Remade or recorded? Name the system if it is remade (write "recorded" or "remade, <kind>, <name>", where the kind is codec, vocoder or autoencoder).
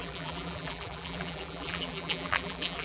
remade, vocoder, BigVGAN v2